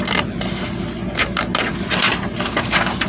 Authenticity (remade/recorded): recorded